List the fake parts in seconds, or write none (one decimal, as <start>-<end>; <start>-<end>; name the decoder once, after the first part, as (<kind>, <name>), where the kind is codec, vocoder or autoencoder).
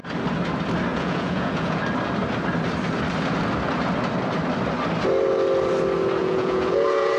0.9-1.8 (vocoder, Vocos); 6.2-7.2